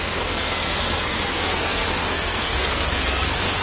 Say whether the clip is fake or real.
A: fake